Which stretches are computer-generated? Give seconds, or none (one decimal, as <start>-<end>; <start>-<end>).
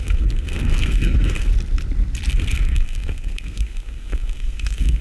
0.0-1.5; 2.3-5.0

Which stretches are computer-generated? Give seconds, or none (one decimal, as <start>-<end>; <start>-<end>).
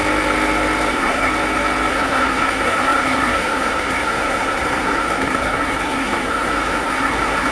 0.9-1.3; 1.9-7.5